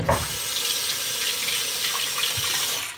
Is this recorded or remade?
recorded